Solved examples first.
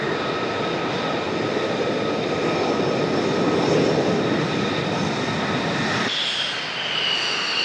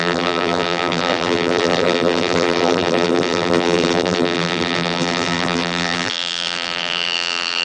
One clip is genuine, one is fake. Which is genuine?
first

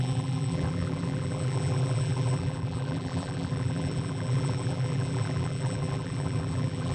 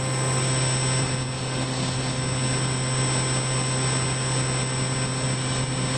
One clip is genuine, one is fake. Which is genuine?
second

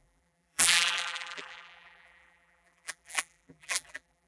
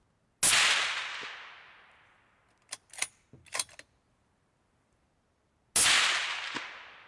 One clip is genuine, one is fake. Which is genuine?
second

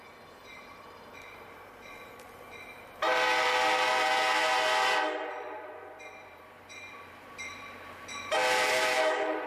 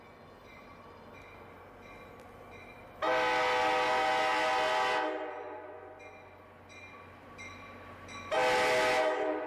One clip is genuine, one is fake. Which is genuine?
second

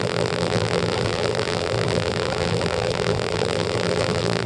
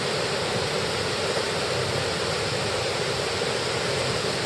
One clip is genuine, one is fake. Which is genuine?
second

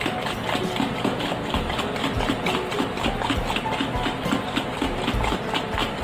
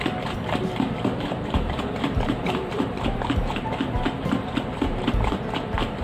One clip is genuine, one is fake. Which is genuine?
first